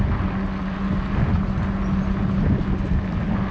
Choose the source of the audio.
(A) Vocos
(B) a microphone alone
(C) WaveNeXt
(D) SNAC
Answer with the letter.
B